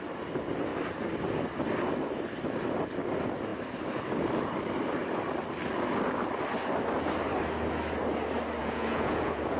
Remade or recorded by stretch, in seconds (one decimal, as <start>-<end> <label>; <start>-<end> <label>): 0.0-8.6 recorded; 8.6-9.6 remade